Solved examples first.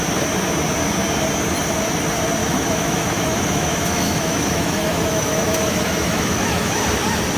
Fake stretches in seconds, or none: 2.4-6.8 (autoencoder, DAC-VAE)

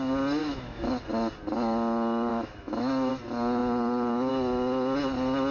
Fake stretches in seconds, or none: 0.4-0.9 (autoencoder, DAC-VAE); 2.3-3.1

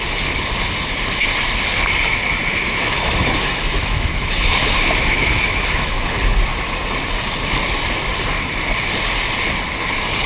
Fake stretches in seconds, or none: 2.5-6.2 (autoencoder, DAC-VAE)

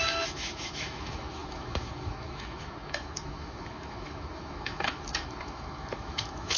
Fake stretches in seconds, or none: 0.0-6.6 (autoencoder, DAC-VAE)

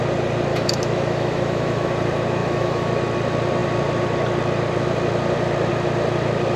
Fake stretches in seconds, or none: 0.5-1.9 (autoencoder, DAC-VAE); 2.4-2.9

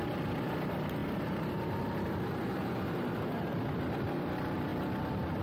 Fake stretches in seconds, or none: none

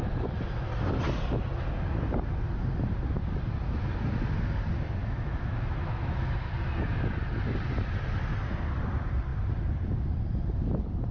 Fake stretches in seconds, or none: 5.0-6.5 (autoencoder, DAC-VAE)

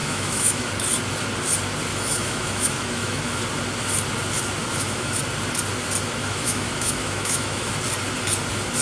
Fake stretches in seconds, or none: 0.0-0.7 (autoencoder, DAC-VAE); 1.9-3.4; 4.6-5.2; 6.2-7.7